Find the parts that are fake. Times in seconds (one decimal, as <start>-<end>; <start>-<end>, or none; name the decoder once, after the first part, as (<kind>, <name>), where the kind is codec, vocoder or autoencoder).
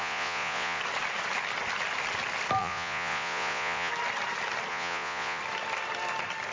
0.0-0.8 (vocoder, Vocos); 2.6-3.9; 4.7-5.4